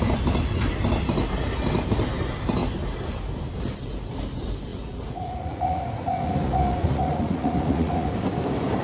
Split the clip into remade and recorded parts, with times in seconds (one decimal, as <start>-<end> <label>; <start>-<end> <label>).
0.0-4.7 recorded; 4.7-8.1 remade; 8.1-8.8 recorded